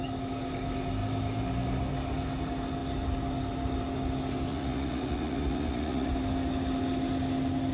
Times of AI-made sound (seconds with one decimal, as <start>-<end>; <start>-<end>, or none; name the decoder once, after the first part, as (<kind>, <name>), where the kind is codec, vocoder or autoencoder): 4.5-6.1 (vocoder, Vocos)